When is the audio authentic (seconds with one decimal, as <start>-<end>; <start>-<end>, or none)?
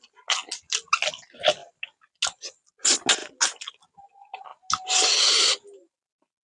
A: 0.0-6.4